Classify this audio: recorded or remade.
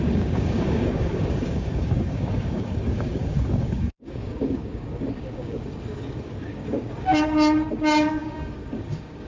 remade